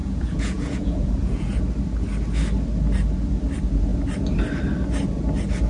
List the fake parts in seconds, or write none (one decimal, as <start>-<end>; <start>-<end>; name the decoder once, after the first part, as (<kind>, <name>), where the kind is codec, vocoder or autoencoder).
0.0-1.6 (vocoder, Vocos)